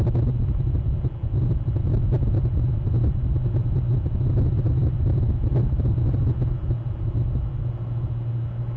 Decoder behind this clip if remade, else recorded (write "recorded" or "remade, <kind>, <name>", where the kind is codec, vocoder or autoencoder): recorded